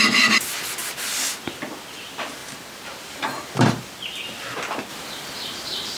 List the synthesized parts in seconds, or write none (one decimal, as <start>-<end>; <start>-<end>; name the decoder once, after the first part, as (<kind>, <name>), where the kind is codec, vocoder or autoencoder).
2.4-3.8 (vocoder, BigVGAN v2); 4.9-6.0